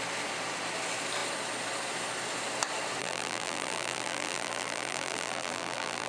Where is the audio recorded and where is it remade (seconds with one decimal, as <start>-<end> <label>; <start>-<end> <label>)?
0.0-3.0 recorded; 3.0-6.1 remade